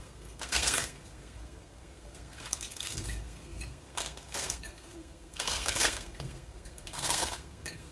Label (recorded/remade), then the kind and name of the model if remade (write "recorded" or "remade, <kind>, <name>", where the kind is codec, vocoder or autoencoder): remade, codec, SNAC